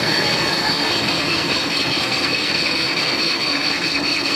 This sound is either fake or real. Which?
fake